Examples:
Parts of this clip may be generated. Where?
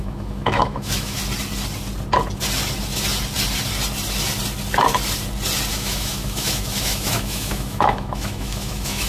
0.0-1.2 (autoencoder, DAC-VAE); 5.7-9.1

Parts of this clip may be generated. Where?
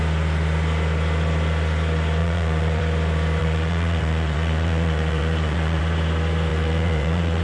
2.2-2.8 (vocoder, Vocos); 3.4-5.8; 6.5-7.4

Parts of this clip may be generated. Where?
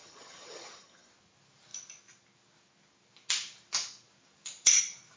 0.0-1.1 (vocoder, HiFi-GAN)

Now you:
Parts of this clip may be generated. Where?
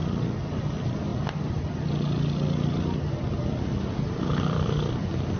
none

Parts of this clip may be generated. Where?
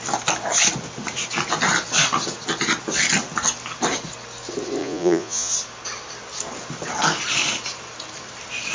4.8-5.5 (vocoder, Vocos)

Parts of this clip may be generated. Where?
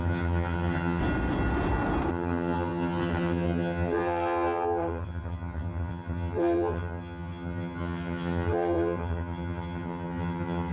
0.0-1.0 (vocoder, HiFi-GAN); 2.1-10.7